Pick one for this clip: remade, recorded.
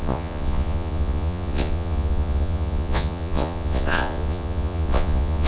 remade